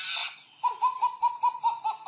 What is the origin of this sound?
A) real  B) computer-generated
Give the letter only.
A